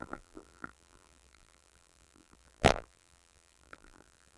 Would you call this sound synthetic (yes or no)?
yes